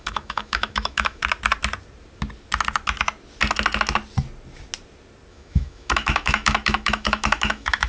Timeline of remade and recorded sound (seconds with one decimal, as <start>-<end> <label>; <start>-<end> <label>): 0.0-1.2 remade; 1.2-5.3 recorded; 5.3-7.9 remade